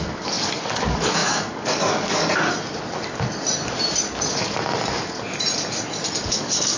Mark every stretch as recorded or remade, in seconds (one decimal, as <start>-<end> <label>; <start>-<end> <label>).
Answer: 0.0-2.2 remade; 2.2-6.3 recorded; 6.3-6.8 remade